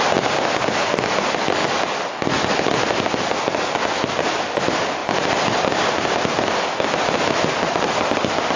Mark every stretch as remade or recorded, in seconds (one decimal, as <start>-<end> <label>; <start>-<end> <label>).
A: 0.0-8.6 recorded